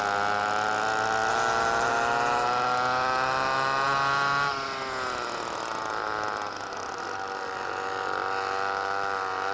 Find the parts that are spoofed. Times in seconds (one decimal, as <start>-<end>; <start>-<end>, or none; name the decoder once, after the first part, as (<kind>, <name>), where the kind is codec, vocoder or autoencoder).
none